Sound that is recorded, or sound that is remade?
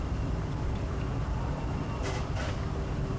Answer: remade